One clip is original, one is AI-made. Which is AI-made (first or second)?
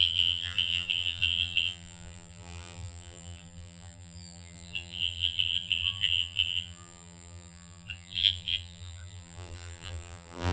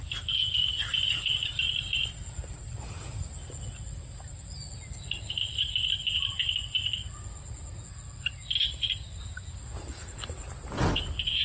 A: first